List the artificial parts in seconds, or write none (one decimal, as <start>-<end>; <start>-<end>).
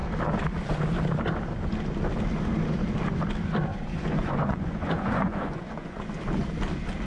3.7-6.1